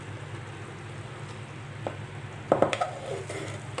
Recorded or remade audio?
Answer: recorded